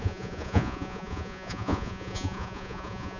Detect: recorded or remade remade